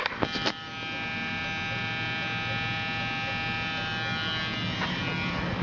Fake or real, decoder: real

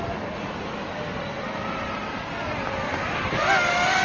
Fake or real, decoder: real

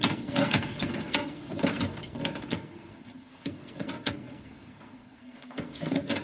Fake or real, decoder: fake, codec, SNAC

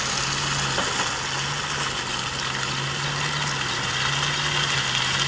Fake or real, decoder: real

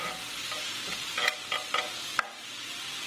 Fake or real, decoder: real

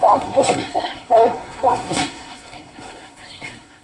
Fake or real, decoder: fake, codec, SNAC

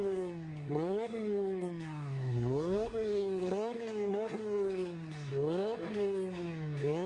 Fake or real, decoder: fake, codec, SNAC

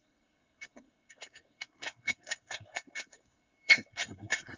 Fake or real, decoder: fake, codec, SNAC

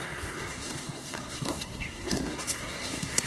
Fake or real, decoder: fake, codec, SNAC